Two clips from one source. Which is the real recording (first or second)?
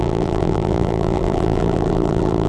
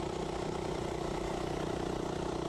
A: second